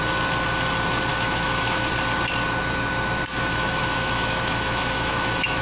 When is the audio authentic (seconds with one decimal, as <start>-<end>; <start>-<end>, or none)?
0.0-1.1; 1.9-3.3